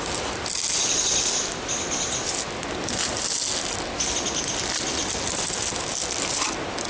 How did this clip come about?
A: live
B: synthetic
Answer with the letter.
A